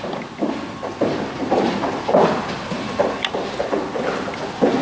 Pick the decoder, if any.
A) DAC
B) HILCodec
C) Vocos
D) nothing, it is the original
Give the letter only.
D